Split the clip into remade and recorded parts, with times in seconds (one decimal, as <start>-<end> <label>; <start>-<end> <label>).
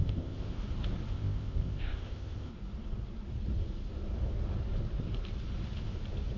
0.0-0.6 remade; 0.6-1.1 recorded; 1.1-2.5 remade; 2.5-6.4 recorded